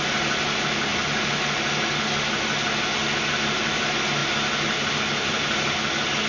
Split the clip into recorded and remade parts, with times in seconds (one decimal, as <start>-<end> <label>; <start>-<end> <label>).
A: 0.0-6.3 recorded